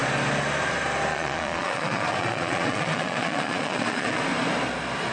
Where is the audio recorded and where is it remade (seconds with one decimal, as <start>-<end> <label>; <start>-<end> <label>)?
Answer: 0.0-1.1 recorded; 1.1-4.2 remade; 4.2-5.1 recorded